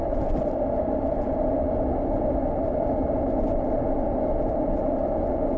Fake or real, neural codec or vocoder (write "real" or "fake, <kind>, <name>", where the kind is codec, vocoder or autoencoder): real